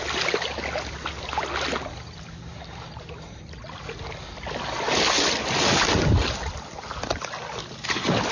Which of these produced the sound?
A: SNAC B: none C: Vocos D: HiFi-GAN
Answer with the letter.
B